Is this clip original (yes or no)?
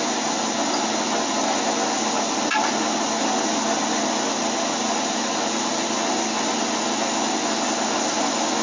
yes